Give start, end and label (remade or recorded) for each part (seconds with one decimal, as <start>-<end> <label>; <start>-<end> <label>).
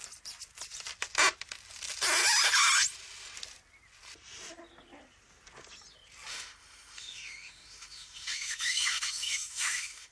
0.0-6.3 recorded; 6.3-10.1 remade